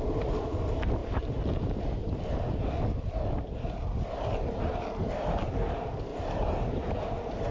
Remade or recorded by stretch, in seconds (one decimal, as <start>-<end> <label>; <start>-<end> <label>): 0.0-1.0 recorded; 1.0-1.8 remade; 1.8-6.1 recorded; 6.1-7.5 remade